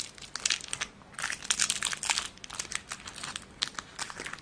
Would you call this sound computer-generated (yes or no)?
no